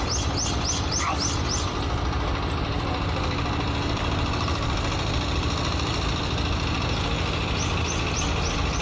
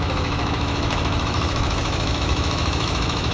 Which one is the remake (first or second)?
second